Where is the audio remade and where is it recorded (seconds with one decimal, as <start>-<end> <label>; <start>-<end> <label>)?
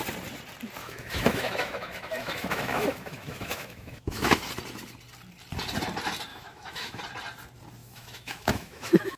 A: 0.0-0.8 recorded; 0.8-4.5 remade; 4.5-6.3 recorded; 6.3-7.0 remade; 7.0-7.8 recorded; 7.8-9.2 remade